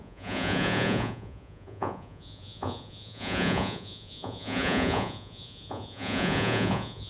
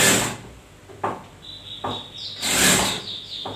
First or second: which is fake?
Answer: first